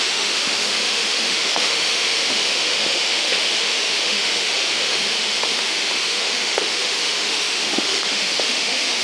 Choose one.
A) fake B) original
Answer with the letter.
A